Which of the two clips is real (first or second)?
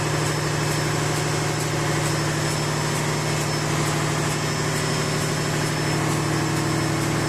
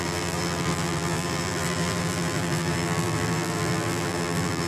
first